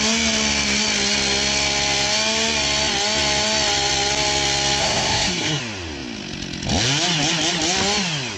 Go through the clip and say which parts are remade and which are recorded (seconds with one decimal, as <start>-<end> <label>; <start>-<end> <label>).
0.0-4.8 recorded; 4.8-5.6 remade; 5.6-8.4 recorded